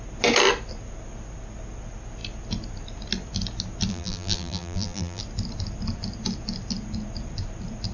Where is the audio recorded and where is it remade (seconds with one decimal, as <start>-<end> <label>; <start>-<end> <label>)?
0.0-3.9 recorded; 3.9-5.2 remade; 5.2-7.9 recorded